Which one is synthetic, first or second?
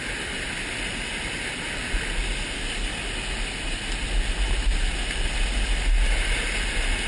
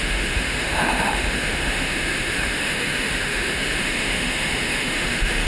second